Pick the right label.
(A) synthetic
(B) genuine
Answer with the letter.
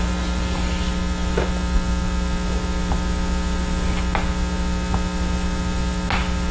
B